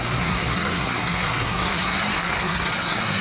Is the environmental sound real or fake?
fake